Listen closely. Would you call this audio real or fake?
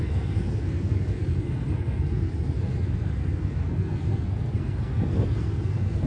fake